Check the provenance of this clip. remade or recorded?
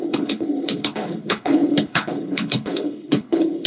remade